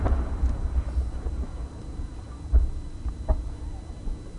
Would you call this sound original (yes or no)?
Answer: yes